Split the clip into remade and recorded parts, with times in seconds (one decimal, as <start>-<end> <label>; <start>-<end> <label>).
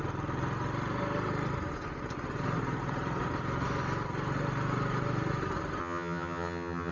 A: 0.0-5.8 recorded; 5.8-6.9 remade